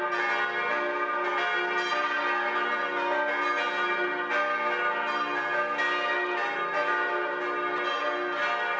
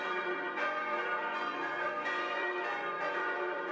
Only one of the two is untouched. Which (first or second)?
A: first